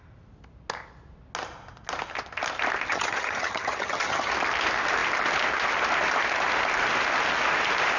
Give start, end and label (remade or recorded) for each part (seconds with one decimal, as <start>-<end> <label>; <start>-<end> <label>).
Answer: 0.0-2.9 recorded; 2.9-4.3 remade; 4.3-8.0 recorded